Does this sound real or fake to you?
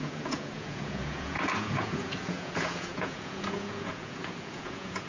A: fake